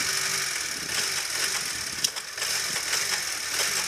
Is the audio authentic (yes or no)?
yes